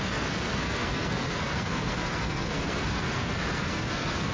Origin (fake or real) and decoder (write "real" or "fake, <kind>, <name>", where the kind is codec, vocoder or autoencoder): fake, codec, SNAC